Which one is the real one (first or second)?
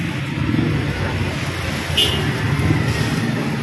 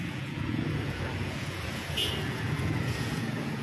first